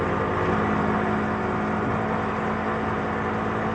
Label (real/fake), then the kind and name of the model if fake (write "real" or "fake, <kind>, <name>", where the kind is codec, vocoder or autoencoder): real